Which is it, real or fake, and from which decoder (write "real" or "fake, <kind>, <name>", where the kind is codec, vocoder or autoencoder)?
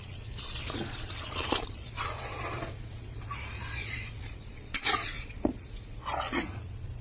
fake, vocoder, Vocos